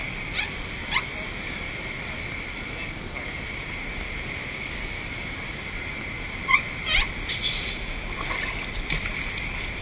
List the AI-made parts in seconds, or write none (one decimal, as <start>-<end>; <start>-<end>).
4.4-5.1